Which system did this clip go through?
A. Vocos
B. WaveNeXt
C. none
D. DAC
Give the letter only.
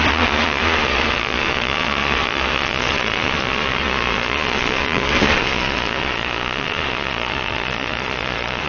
A